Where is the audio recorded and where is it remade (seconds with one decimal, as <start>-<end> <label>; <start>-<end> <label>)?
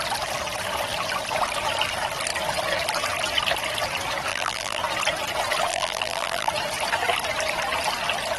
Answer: 0.0-4.3 recorded; 4.3-4.8 remade; 4.8-5.7 recorded; 5.7-6.5 remade; 6.5-8.4 recorded